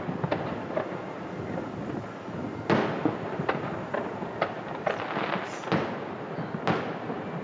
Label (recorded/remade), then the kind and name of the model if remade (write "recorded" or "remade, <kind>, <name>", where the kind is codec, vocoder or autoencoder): recorded